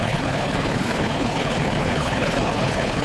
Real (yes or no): no